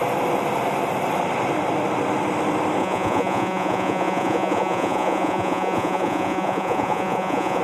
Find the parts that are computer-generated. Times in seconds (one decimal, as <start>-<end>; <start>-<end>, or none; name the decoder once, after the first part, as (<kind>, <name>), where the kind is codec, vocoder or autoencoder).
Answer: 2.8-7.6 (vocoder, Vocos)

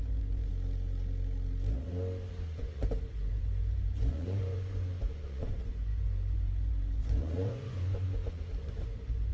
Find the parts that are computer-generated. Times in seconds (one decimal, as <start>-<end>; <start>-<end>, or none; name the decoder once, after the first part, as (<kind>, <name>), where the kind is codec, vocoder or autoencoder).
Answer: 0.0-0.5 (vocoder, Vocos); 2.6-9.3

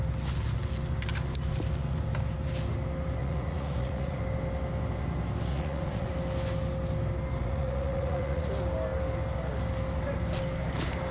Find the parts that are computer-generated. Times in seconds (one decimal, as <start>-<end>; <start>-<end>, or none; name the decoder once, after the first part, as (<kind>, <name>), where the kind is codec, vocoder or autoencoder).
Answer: 3.2-4.2 (vocoder, Vocos); 5.5-6.1; 7.4-8.5

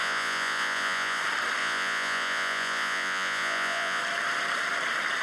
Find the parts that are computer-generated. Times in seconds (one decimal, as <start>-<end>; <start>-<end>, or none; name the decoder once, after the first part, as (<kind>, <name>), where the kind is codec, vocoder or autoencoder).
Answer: 0.0-1.2 (vocoder, Vocos); 1.6-4.0